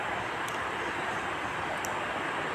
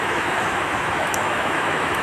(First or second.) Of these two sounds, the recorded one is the first